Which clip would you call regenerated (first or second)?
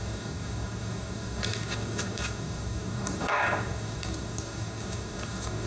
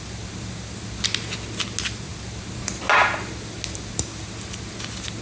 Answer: first